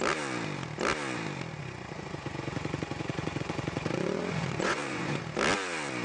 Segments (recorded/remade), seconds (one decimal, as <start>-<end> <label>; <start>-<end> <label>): 0.0-1.6 recorded; 1.6-5.2 remade; 5.2-6.0 recorded